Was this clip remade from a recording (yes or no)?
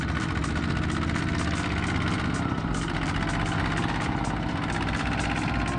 no